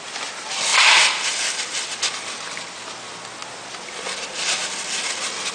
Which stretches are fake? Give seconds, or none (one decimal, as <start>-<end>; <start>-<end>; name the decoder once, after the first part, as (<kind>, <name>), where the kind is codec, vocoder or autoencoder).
none